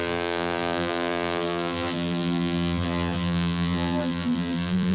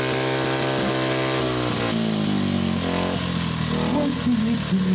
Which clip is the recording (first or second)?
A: second